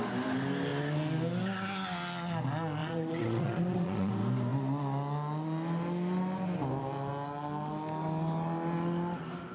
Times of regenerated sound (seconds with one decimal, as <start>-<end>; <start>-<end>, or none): 2.8-4.1